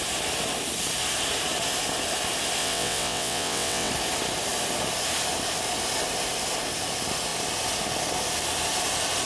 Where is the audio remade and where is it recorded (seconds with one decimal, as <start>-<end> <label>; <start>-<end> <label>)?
0.0-2.6 recorded; 2.6-3.9 remade; 3.9-9.3 recorded